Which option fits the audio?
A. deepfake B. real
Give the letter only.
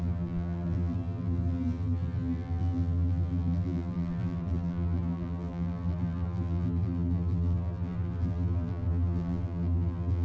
A